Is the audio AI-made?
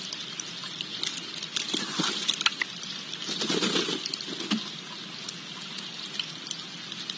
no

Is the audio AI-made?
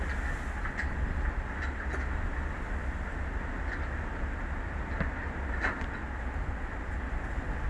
no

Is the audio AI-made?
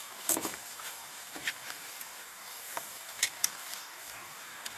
yes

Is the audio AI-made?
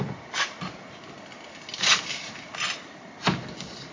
no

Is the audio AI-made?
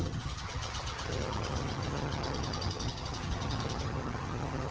yes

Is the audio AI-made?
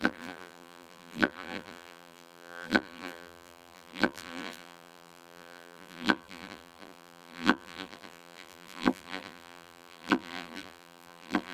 yes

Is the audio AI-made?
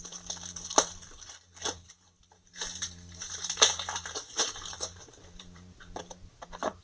yes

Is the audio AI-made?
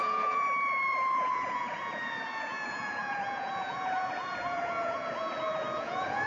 yes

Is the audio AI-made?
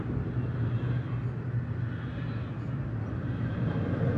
no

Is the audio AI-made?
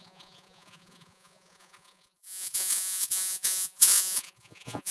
yes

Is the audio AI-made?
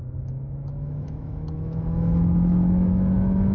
yes